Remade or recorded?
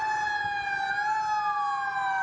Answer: recorded